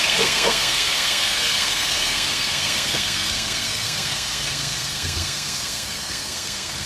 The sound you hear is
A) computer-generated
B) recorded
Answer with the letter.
A